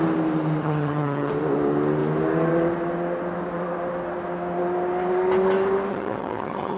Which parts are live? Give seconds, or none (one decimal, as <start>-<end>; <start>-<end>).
0.0-0.6; 1.3-5.9